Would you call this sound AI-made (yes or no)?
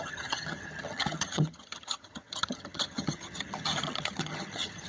yes